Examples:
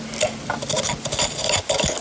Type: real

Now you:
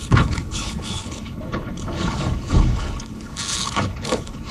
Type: fake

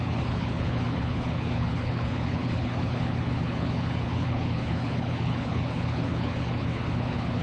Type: fake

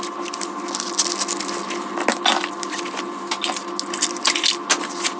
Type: real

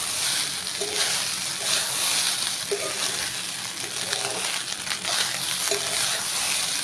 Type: real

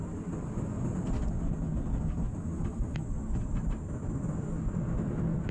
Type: real